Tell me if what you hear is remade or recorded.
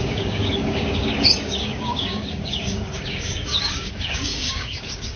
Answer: remade